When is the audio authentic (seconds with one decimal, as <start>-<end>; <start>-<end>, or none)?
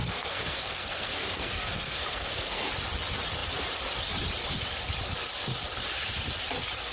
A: 2.6-6.9